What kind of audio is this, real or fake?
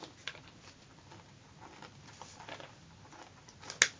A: real